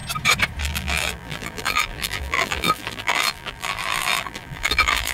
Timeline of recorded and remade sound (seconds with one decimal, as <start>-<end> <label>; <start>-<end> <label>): 0.0-0.6 recorded; 0.6-5.1 remade